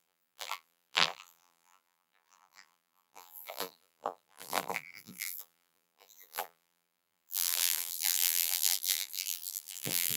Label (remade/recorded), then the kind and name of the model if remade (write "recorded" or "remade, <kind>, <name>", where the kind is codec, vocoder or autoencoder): remade, vocoder, BigVGAN v2